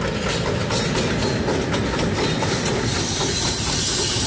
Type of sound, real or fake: real